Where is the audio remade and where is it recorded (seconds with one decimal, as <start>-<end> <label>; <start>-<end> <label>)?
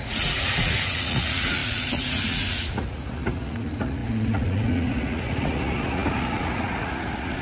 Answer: 0.0-7.4 remade